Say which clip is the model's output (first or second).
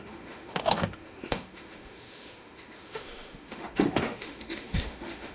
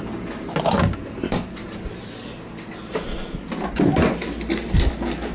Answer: first